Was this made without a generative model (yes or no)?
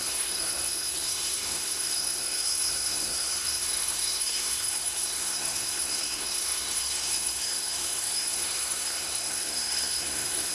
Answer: no